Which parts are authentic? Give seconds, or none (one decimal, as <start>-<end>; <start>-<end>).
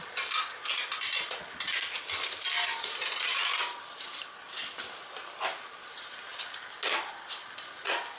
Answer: 0.0-8.2